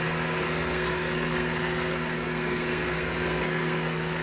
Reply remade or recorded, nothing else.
remade